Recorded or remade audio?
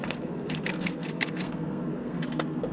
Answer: remade